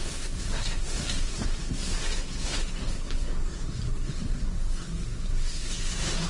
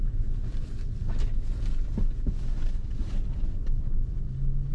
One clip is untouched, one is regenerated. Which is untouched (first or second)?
second